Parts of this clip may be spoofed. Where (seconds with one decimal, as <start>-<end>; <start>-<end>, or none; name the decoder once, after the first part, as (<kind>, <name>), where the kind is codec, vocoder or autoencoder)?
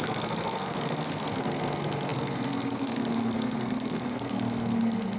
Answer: 0.0-5.2 (codec, SNAC)